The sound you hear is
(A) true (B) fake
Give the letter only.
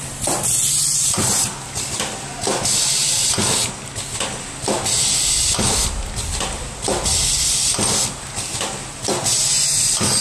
A